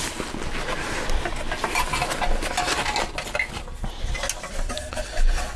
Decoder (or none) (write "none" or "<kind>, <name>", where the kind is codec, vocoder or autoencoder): none